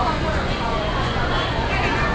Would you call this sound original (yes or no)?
no